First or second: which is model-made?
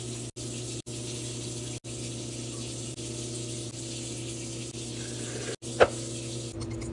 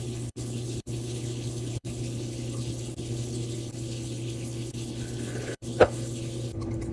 second